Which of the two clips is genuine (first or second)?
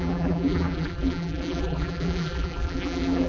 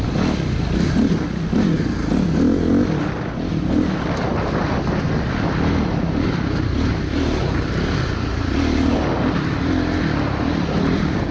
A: second